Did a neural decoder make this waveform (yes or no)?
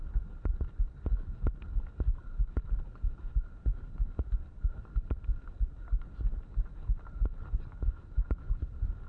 no